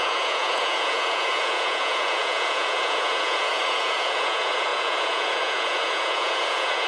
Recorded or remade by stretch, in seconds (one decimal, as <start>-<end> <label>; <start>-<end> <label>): 0.0-6.9 remade